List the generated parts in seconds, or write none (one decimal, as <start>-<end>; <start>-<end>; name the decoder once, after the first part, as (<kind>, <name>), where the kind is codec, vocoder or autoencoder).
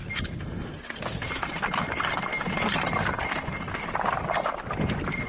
0.0-1.6 (vocoder, BigVGAN v2); 2.3-2.8